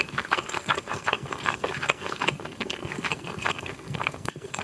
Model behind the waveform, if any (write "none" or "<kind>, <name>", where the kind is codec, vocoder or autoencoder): codec, SNAC